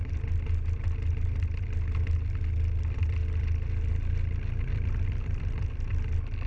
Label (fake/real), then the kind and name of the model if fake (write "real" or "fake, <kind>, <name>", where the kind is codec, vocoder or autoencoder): fake, vocoder, BigVGAN v2